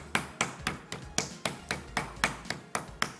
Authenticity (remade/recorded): recorded